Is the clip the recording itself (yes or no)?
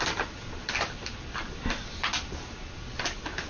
yes